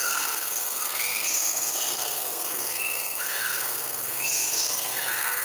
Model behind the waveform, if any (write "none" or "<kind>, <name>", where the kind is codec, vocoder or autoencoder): codec, SNAC